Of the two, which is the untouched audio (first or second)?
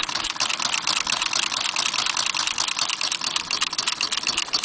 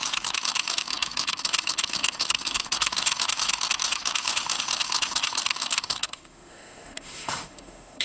first